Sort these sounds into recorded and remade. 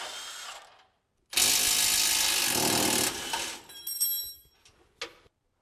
recorded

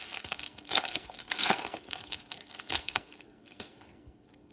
remade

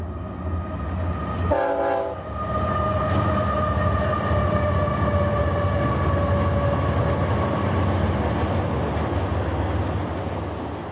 recorded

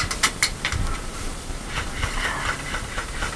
recorded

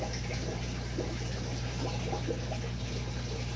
recorded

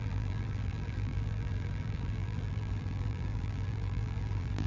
remade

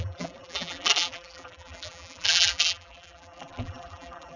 remade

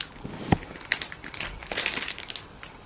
recorded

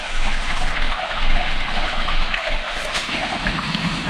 remade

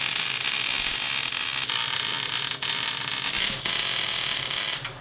recorded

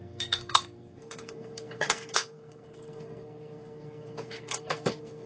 remade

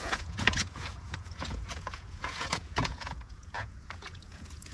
remade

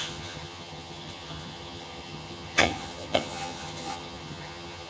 remade